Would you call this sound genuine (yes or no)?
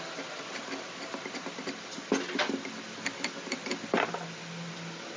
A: yes